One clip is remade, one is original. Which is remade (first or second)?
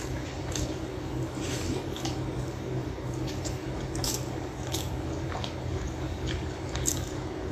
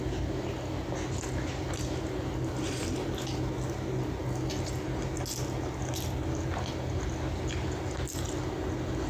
first